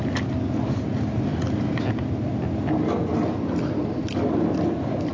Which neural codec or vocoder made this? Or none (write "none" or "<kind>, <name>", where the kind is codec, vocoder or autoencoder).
none